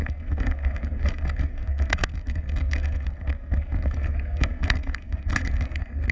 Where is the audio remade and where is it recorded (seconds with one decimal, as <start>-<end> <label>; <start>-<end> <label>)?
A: 0.0-6.1 remade